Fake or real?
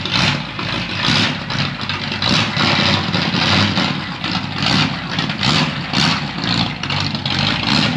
real